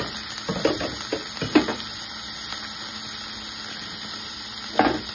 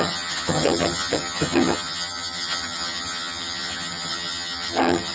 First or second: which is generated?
second